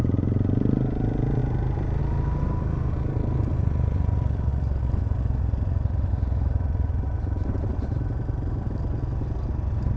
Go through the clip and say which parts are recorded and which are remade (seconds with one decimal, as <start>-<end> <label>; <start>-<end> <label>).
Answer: 0.0-10.0 recorded